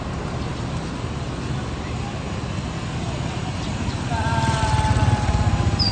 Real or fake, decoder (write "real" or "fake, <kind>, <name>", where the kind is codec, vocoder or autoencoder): real